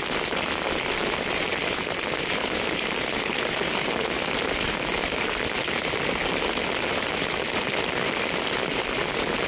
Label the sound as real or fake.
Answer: real